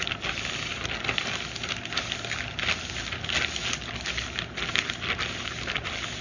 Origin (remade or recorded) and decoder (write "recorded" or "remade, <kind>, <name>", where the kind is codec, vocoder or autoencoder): recorded